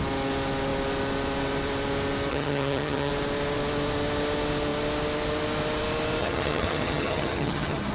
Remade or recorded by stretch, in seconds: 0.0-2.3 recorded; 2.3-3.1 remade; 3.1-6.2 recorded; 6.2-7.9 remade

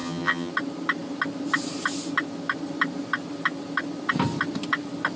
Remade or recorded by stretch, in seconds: 0.0-0.5 remade; 0.5-5.2 recorded

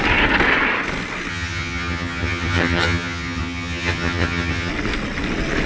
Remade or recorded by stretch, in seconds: 0.0-1.3 recorded; 1.3-4.7 remade; 4.7-5.7 recorded